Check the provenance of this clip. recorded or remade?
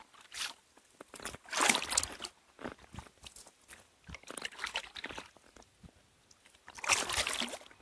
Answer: recorded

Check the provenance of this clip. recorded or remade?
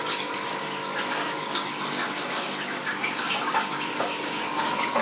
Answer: remade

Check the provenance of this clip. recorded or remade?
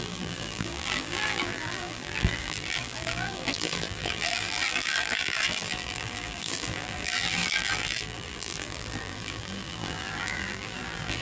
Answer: remade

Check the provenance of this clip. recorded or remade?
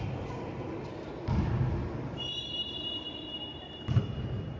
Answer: recorded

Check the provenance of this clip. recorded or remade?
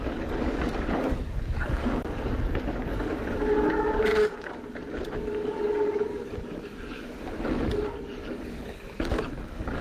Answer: remade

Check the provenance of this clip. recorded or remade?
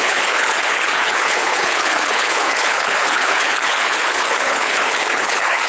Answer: remade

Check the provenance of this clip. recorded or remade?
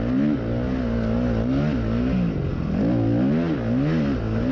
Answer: recorded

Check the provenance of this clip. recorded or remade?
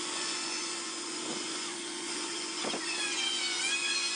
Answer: remade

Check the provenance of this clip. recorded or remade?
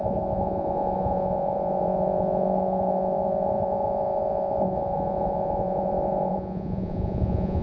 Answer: remade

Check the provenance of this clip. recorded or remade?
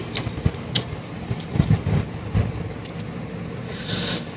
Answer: recorded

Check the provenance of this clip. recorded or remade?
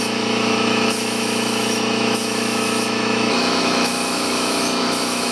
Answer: remade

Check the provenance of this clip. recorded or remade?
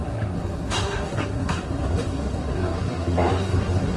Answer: remade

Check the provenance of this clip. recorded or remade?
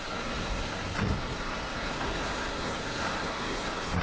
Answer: remade